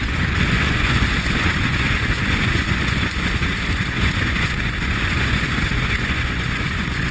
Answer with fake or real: fake